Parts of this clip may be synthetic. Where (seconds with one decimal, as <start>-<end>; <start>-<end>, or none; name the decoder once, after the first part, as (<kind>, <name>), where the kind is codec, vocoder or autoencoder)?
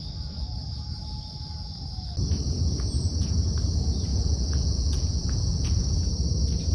4.1-6.0 (vocoder, Vocos)